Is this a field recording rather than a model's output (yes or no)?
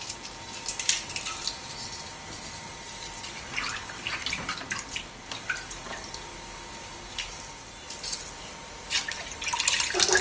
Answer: yes